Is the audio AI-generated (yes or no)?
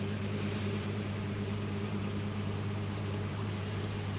yes